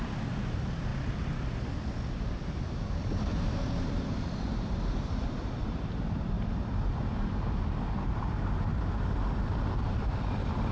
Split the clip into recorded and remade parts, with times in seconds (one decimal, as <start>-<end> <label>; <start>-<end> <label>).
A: 0.0-0.9 remade; 0.9-2.1 recorded; 2.1-8.7 remade; 8.7-9.7 recorded; 9.7-10.7 remade

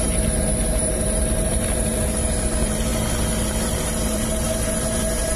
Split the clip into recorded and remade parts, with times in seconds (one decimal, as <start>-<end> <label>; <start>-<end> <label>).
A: 0.0-5.4 remade

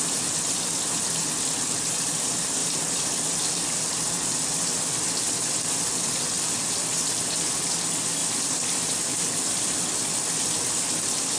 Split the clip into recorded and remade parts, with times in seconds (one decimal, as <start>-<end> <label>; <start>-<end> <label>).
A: 0.0-2.6 recorded; 2.6-7.2 remade; 7.2-8.2 recorded; 8.2-10.0 remade; 10.0-11.4 recorded